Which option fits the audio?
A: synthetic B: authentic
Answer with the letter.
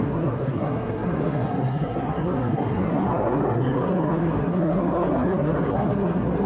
A